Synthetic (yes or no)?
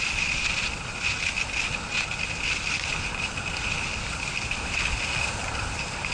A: no